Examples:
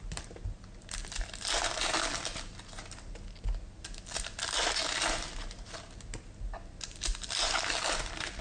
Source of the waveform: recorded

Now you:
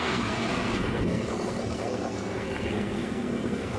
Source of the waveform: remade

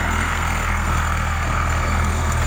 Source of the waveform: remade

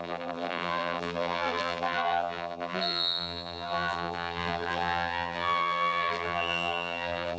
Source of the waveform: remade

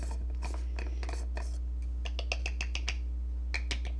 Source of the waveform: recorded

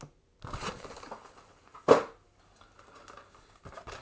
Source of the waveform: recorded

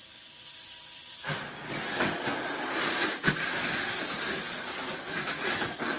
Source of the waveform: recorded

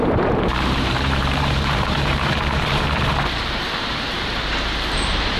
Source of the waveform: remade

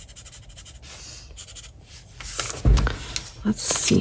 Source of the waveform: recorded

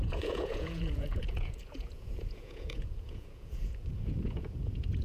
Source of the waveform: remade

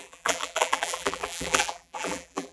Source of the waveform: remade